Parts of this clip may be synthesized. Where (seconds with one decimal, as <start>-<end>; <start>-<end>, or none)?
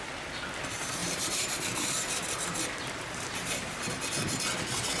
1.0-4.0